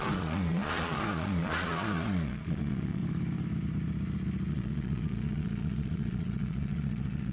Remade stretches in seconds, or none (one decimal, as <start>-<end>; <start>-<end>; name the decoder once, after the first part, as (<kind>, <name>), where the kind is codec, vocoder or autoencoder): 0.0-3.0 (vocoder, Vocos); 4.5-7.3

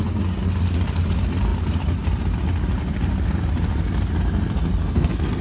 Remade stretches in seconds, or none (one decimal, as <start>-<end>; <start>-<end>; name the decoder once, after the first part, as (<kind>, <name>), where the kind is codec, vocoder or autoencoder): 4.8-5.4 (codec, SNAC)

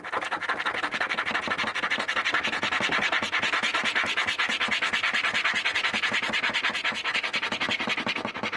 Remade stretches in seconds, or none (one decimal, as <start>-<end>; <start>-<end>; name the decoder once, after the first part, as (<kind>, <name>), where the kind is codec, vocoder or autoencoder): 3.7-5.2 (vocoder, BigVGAN v2)

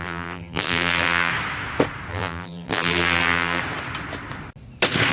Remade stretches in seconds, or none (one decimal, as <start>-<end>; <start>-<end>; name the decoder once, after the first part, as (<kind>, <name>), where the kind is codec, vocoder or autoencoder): 0.0-1.3 (vocoder, BigVGAN v2); 2.1-3.6

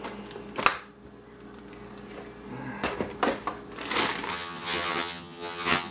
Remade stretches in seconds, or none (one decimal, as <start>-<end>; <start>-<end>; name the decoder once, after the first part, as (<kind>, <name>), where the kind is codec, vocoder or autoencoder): 4.3-5.9 (vocoder, HiFi-GAN)